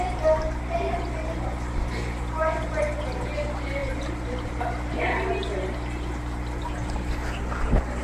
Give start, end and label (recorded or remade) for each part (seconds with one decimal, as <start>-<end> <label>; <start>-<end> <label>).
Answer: 0.0-3.8 recorded; 3.8-4.6 remade; 4.6-8.0 recorded